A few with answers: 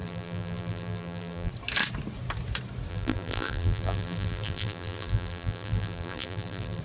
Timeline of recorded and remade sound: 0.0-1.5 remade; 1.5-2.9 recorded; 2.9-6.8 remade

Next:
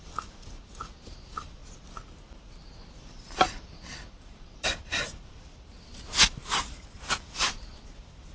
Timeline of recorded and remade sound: 0.0-1.6 remade; 1.6-2.9 recorded; 2.9-5.9 remade; 5.9-7.1 recorded; 7.1-8.3 remade

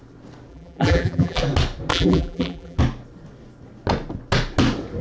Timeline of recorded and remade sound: 0.0-0.5 recorded; 0.5-1.4 remade; 1.4-1.9 recorded; 1.9-2.8 remade; 2.8-5.0 recorded

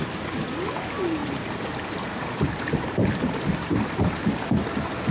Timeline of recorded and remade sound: 0.0-1.2 recorded; 1.2-4.3 remade; 4.3-5.1 recorded

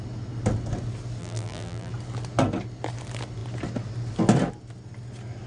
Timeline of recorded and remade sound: 0.0-1.2 recorded; 1.2-1.9 remade; 1.9-5.5 recorded

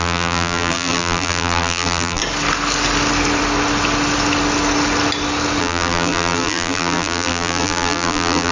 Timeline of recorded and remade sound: 0.0-2.2 remade; 2.2-5.6 recorded; 5.6-8.5 remade